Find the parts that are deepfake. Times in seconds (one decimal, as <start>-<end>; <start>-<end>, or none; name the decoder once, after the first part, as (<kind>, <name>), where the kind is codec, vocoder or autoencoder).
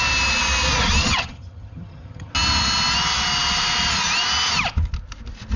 1.0-2.3 (vocoder, HiFi-GAN)